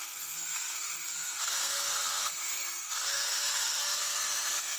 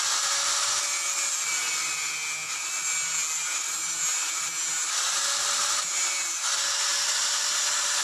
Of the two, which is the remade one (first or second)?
first